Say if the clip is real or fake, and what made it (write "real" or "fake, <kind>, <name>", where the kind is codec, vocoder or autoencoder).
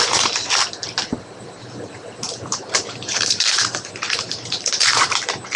fake, vocoder, BigVGAN v2